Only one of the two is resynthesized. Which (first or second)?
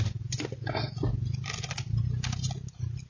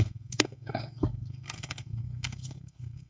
second